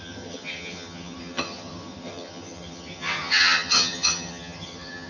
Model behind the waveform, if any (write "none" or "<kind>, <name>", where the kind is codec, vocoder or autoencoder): vocoder, HiFi-GAN